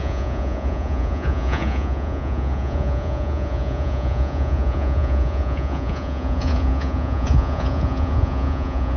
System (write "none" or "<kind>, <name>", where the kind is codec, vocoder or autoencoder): vocoder, Vocos